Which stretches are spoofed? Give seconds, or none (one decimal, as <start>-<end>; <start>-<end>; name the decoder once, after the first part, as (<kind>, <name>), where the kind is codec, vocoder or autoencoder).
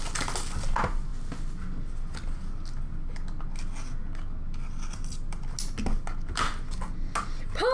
none